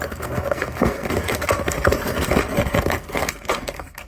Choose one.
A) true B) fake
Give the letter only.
B